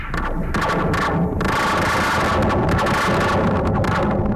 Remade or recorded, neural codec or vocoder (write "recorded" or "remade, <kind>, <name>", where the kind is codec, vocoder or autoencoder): recorded